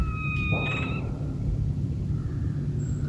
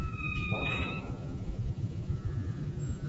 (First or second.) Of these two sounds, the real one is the first